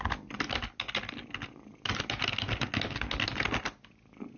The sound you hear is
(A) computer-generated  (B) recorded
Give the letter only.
B